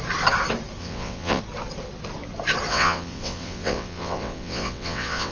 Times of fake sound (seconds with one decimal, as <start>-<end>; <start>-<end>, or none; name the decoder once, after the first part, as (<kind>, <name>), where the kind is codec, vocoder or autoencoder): 0.8-1.4 (vocoder, WaveNeXt); 2.7-5.3